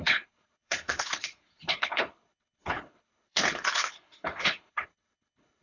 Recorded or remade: remade